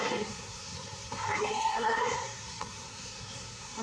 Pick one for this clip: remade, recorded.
remade